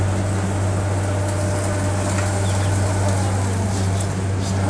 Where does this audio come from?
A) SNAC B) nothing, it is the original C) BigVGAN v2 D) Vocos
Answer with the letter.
B